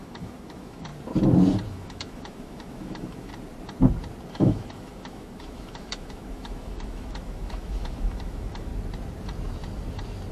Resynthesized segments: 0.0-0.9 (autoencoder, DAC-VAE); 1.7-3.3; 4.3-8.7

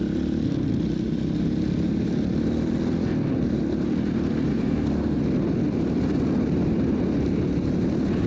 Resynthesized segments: 4.5-5.2 (codec, SNAC)

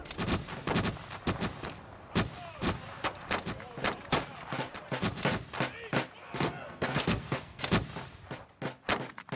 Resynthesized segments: 6.2-7.6 (codec, SNAC)